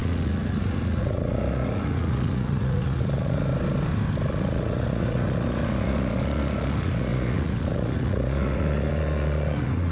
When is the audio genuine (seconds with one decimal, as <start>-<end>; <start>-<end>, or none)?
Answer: 3.5-4.3